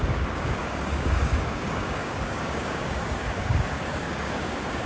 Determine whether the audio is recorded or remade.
remade